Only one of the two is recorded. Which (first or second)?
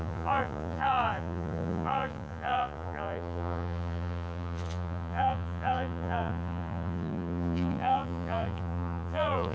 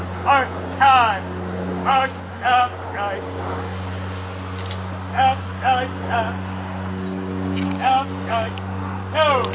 second